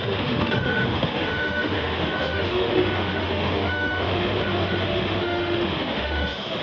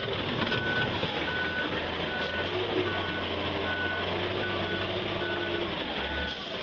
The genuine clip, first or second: second